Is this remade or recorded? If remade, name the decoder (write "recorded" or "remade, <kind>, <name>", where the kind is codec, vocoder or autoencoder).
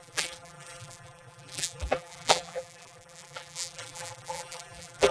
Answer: remade, vocoder, BigVGAN v2